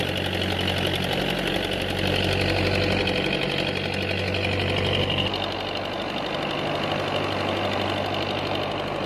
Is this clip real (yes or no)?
yes